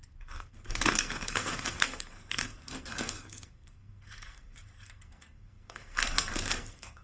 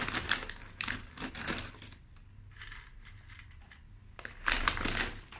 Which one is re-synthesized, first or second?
first